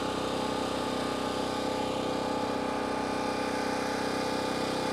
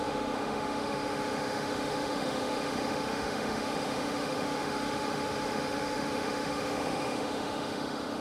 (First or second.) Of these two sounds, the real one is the first